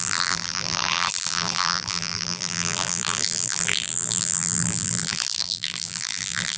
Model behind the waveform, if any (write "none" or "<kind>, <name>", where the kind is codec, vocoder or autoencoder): vocoder, BigVGAN v2